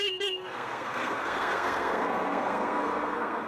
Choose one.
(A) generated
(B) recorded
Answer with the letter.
A